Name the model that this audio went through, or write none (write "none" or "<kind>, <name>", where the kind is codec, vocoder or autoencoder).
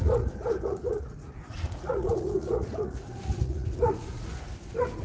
vocoder, Vocos